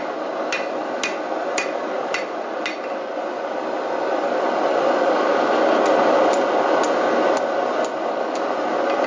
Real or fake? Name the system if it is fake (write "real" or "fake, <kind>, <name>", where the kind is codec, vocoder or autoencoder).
real